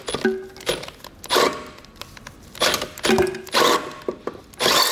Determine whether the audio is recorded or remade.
recorded